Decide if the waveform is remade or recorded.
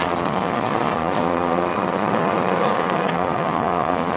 remade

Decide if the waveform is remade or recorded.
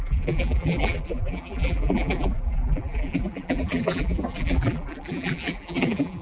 remade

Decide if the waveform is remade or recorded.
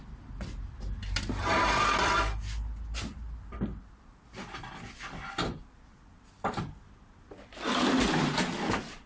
recorded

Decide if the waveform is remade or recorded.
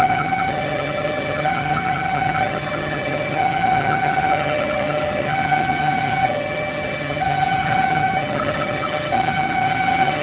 remade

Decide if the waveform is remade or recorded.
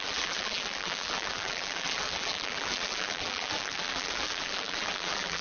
remade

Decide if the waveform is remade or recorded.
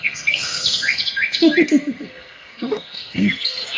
remade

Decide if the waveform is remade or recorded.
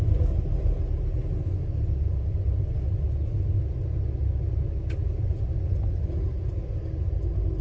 recorded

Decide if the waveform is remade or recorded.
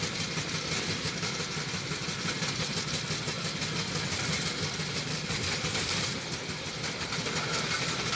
recorded